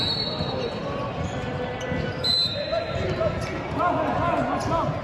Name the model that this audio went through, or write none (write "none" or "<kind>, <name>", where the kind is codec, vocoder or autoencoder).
none